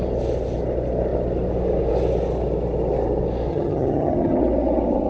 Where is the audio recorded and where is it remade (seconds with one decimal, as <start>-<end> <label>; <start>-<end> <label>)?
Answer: 0.0-3.5 recorded; 3.5-4.4 remade; 4.4-5.1 recorded